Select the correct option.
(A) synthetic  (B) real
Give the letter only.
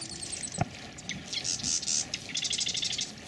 B